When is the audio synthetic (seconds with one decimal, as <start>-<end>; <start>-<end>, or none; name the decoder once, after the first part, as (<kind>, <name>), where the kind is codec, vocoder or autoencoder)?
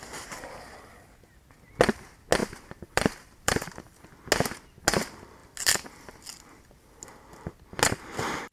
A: 2.4-4.0 (vocoder, BigVGAN v2)